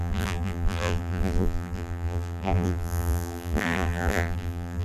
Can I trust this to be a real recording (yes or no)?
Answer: no